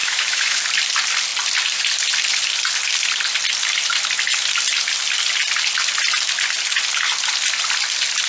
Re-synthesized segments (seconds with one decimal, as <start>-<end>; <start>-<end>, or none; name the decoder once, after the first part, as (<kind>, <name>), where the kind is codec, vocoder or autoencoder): 0.0-0.6 (autoencoder, DAC-VAE)